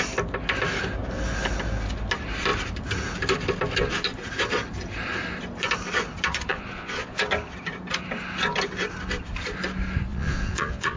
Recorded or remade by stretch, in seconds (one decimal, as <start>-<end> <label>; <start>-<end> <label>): 0.0-6.5 recorded; 6.5-7.2 remade; 7.2-10.1 recorded; 10.1-11.0 remade